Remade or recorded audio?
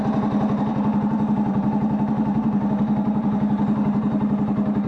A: remade